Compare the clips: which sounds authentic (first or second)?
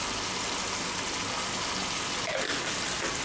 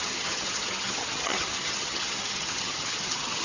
first